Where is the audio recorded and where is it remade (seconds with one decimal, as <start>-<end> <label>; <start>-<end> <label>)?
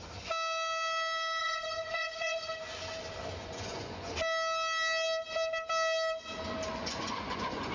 0.0-1.4 recorded; 1.4-2.5 remade; 2.5-3.4 recorded; 3.4-4.1 remade; 4.1-6.8 recorded; 6.8-7.7 remade